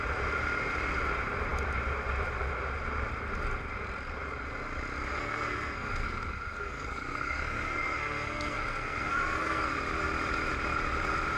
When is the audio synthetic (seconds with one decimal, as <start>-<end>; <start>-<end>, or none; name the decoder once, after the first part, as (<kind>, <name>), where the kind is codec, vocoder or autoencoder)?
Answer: 5.1-9.8 (codec, SNAC)